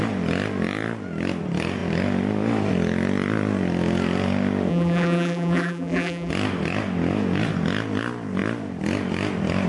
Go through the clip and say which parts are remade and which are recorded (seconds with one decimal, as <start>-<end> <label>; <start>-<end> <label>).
0.0-4.7 recorded; 4.7-6.3 remade; 6.3-9.7 recorded

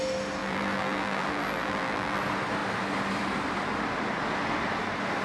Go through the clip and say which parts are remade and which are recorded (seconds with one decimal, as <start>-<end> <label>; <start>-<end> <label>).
0.0-0.4 recorded; 0.4-2.2 remade; 2.2-5.2 recorded

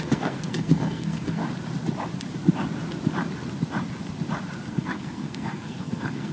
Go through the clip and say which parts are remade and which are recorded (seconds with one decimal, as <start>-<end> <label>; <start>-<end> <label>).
0.0-1.4 remade; 1.4-4.7 recorded; 4.7-6.3 remade

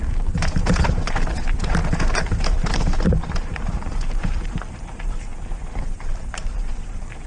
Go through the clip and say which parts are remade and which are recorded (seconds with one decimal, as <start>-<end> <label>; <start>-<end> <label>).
0.0-5.3 remade; 5.3-5.8 recorded; 5.8-7.3 remade

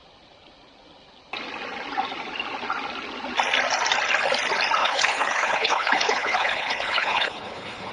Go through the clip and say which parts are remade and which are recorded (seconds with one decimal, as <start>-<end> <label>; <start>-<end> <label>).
0.0-4.8 recorded; 4.8-7.9 remade

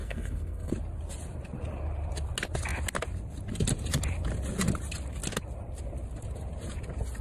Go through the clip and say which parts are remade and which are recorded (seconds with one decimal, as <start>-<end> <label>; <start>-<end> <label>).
0.0-0.7 remade; 0.7-7.2 recorded

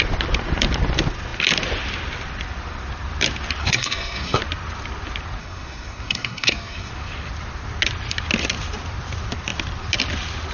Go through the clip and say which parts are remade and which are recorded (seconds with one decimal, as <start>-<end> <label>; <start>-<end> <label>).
0.0-3.6 recorded; 3.6-4.4 remade; 4.4-5.4 recorded; 5.4-6.9 remade; 6.9-10.5 recorded

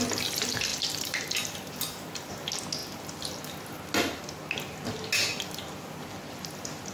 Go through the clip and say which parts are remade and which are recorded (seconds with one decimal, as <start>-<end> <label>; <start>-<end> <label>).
0.0-0.7 recorded; 0.7-2.3 remade; 2.3-6.9 recorded